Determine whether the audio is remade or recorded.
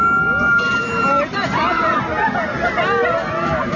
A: recorded